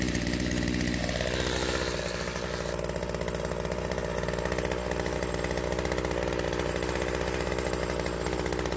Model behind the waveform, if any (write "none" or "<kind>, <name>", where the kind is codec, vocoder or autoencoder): none